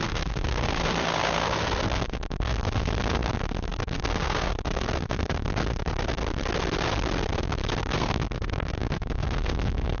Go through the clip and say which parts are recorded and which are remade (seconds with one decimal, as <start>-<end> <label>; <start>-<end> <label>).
0.0-6.2 remade; 6.2-7.8 recorded; 7.8-10.0 remade

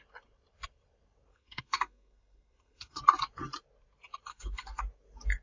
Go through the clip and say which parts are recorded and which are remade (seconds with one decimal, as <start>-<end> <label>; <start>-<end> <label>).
0.0-1.3 recorded; 1.3-3.0 remade; 3.0-4.3 recorded; 4.3-4.8 remade; 4.8-5.4 recorded

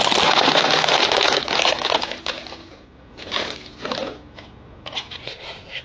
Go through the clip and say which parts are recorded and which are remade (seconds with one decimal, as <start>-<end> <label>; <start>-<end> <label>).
0.0-5.2 recorded; 5.2-5.8 remade

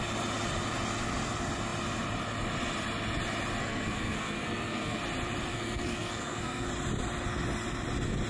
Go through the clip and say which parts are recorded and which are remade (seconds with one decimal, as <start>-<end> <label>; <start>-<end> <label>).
0.0-3.6 recorded; 3.6-5.0 remade; 5.0-5.5 recorded; 5.5-6.7 remade; 6.7-8.3 recorded

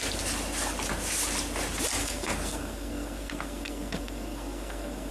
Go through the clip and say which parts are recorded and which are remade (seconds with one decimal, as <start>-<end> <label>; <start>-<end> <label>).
0.0-2.0 recorded; 2.0-5.1 remade